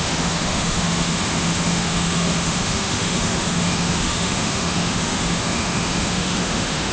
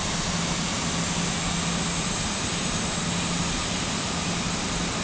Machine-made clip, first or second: first